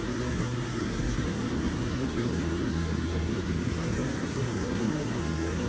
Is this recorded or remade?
remade